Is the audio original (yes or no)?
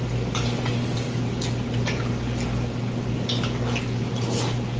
yes